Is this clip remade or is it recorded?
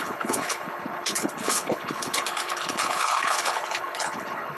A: remade